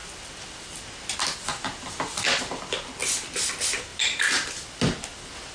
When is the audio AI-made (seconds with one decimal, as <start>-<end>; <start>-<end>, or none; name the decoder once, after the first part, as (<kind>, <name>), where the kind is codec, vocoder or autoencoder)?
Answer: 3.0-3.5 (vocoder, BigVGAN v2); 3.9-4.8